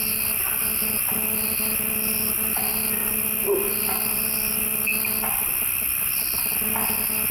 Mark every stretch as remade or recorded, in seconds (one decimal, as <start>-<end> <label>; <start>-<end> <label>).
0.0-7.3 recorded

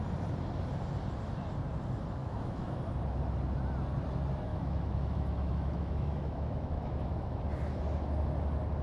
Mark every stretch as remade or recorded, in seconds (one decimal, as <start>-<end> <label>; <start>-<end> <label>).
0.0-2.2 recorded; 2.2-2.8 remade; 2.8-4.5 recorded; 4.5-7.4 remade; 7.4-8.8 recorded

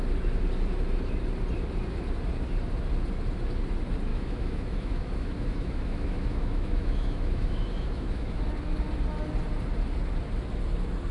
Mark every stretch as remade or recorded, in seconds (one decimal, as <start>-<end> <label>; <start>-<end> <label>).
0.0-4.1 recorded; 4.1-8.4 remade; 8.4-11.1 recorded

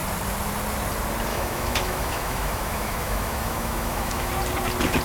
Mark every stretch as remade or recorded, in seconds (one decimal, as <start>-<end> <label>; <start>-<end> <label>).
0.0-1.3 recorded; 1.3-4.3 remade; 4.3-5.0 recorded

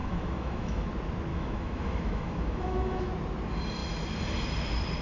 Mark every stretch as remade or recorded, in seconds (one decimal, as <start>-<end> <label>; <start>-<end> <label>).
0.0-0.9 remade; 0.9-1.3 recorded; 1.3-3.1 remade; 3.1-5.0 recorded

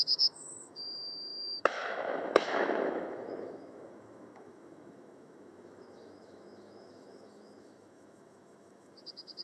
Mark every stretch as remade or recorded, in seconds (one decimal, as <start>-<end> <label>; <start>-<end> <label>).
0.0-9.4 remade

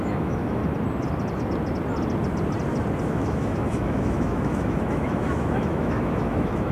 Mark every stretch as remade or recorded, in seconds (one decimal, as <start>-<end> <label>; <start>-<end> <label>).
0.0-0.6 remade; 0.6-3.0 recorded; 3.0-6.7 remade